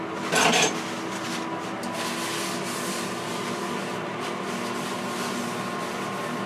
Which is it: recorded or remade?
recorded